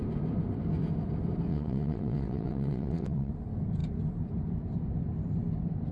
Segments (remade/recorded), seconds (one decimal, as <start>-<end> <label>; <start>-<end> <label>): 0.0-1.5 recorded; 1.5-3.3 remade; 3.3-5.9 recorded